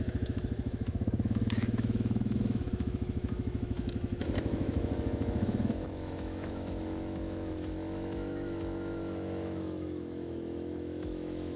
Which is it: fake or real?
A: fake